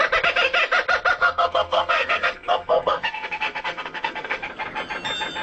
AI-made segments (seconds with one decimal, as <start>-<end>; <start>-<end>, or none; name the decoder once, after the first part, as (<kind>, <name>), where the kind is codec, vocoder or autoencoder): 1.2-4.4 (codec, SNAC)